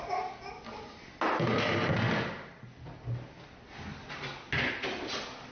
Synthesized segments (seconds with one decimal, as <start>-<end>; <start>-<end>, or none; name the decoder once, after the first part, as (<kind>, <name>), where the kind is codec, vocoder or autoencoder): none